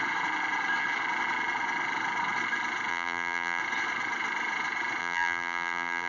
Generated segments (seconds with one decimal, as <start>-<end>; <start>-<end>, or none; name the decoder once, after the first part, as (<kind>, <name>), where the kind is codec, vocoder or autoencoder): 2.9-3.6 (vocoder, BigVGAN v2); 5.0-6.1